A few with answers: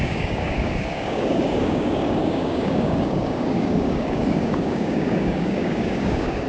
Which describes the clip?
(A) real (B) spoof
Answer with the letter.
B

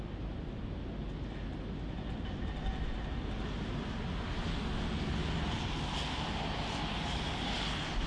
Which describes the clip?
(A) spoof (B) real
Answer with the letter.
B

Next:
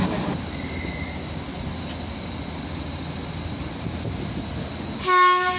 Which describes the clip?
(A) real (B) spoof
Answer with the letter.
A